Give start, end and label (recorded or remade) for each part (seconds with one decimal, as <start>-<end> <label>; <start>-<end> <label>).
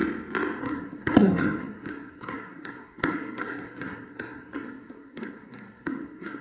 0.0-0.6 recorded; 0.6-6.4 remade